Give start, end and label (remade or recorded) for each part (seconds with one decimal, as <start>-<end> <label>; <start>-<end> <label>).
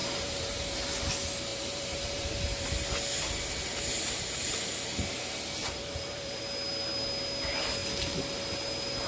0.0-0.8 remade; 0.8-1.5 recorded; 1.5-2.7 remade; 2.7-5.6 recorded; 5.6-6.4 remade; 6.4-9.1 recorded